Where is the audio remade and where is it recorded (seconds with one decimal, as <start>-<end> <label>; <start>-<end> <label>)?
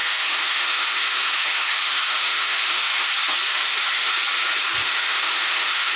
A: 0.0-3.1 remade; 3.1-3.5 recorded; 3.5-4.1 remade; 4.1-4.8 recorded; 4.8-6.0 remade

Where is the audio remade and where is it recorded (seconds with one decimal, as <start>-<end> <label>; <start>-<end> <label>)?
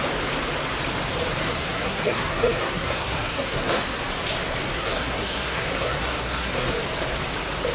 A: 0.0-1.4 recorded; 1.4-3.8 remade; 3.8-4.7 recorded; 4.7-6.7 remade; 6.7-7.7 recorded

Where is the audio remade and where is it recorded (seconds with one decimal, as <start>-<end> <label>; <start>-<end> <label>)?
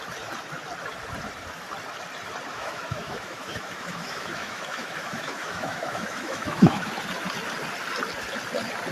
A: 0.0-2.5 recorded; 2.5-6.9 remade; 6.9-8.9 recorded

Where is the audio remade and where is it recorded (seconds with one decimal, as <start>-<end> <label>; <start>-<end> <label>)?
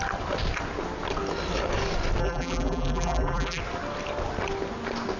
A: 0.0-2.2 recorded; 2.2-3.6 remade; 3.6-5.2 recorded